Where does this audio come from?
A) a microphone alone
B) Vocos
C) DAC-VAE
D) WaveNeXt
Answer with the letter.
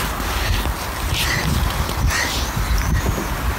A